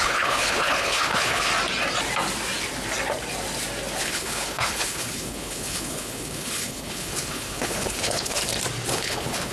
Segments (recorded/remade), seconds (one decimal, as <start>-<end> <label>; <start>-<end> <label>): 0.0-1.5 remade; 1.5-4.0 recorded; 4.0-8.4 remade; 8.4-8.9 recorded; 8.9-9.5 remade